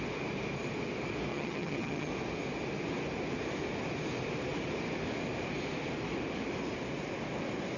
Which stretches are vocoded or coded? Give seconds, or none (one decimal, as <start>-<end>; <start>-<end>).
1.3-2.1